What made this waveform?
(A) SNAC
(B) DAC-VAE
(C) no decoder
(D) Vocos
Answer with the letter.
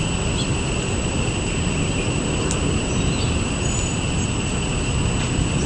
C